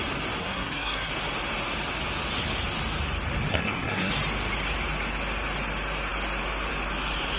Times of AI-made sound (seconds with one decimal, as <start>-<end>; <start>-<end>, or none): 0.4-1.1; 3.5-4.1